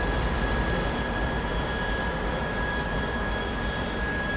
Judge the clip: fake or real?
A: real